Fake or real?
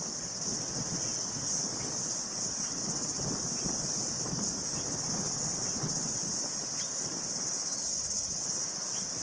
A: real